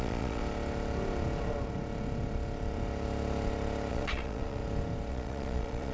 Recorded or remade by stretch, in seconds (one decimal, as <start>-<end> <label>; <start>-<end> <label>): 0.0-0.4 remade; 0.4-3.9 recorded; 3.9-4.6 remade; 4.6-5.1 recorded; 5.1-5.9 remade